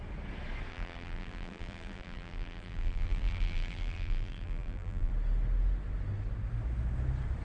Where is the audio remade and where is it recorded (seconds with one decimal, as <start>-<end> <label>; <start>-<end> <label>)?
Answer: 0.0-0.7 recorded; 0.7-5.1 remade; 5.1-7.4 recorded